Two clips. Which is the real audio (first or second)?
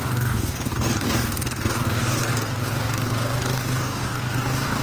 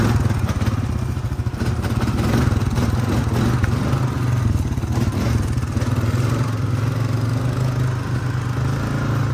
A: second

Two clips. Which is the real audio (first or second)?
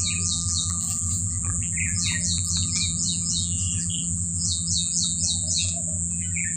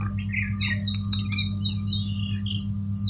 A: second